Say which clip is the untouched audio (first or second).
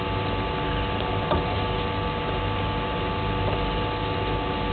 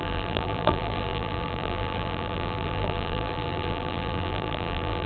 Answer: first